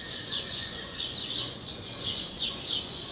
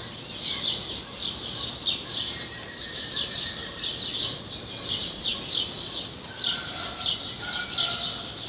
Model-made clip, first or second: first